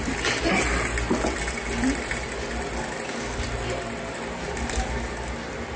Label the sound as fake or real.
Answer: real